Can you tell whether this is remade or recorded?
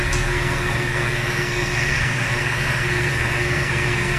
remade